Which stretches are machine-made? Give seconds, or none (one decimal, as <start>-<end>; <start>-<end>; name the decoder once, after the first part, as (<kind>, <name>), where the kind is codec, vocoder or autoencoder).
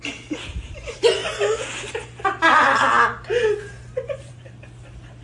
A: none